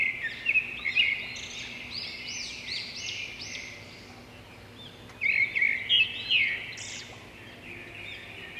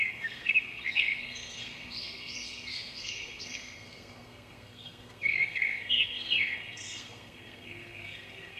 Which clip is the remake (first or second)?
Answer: second